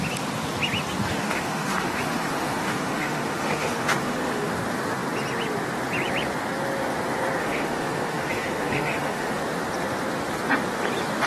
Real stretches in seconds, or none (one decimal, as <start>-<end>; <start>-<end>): 0.0-1.1; 4.5-7.4; 9.4-11.3